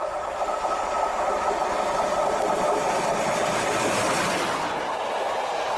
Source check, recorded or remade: remade